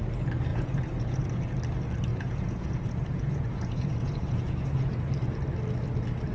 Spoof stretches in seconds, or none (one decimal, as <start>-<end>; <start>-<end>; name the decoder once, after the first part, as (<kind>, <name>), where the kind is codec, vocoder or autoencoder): 0.5-1.4 (vocoder, Vocos); 2.1-5.0